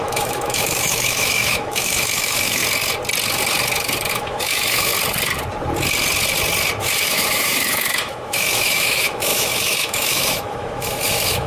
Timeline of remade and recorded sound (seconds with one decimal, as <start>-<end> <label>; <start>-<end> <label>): 0.0-2.6 remade; 2.6-4.1 recorded; 4.1-4.9 remade; 4.9-6.8 recorded; 6.8-11.5 remade